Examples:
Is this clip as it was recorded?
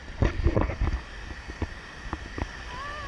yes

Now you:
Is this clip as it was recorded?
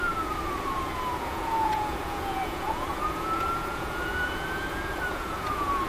no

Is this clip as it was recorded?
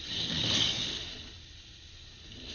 yes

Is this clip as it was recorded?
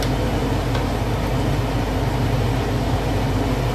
yes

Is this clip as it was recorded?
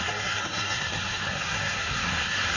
no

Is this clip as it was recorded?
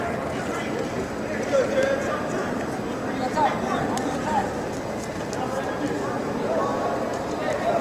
yes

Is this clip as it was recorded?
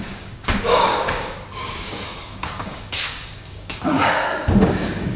no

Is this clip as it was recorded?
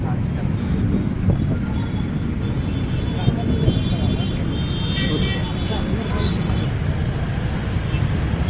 yes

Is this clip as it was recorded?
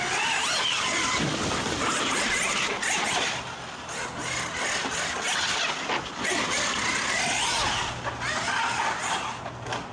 yes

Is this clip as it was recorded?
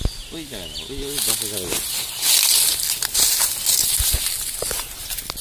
yes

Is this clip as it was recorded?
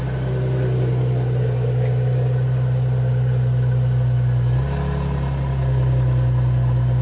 yes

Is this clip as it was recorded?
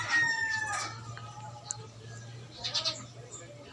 yes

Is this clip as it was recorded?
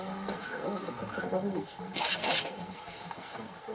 no